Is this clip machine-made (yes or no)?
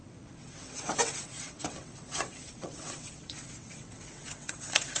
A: yes